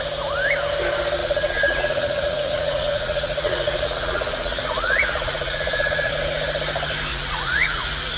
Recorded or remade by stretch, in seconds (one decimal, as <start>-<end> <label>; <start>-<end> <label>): 0.0-1.2 recorded; 1.2-6.1 remade; 6.1-7.1 recorded; 7.1-8.2 remade